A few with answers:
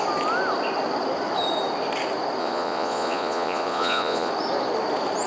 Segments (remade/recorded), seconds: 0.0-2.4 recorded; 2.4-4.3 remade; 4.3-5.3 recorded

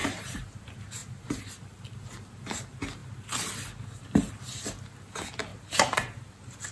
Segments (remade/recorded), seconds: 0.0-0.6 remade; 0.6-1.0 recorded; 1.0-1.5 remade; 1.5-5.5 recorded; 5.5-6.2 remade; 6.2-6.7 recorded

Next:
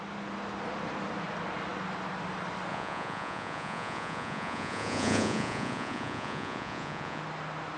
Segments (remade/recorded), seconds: 0.0-2.7 recorded; 2.7-7.2 remade; 7.2-7.8 recorded